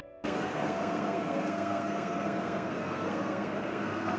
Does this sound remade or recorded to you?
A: remade